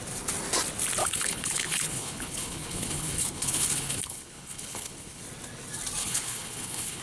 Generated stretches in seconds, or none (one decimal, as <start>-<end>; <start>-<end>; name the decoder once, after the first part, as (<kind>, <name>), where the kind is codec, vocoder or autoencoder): 1.0-5.2 (codec, HILCodec); 6.0-7.0